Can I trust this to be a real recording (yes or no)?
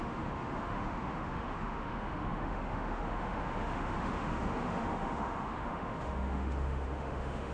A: no